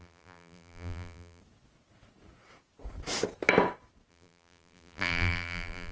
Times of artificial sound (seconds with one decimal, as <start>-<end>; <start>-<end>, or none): 0.0-1.4; 4.1-5.9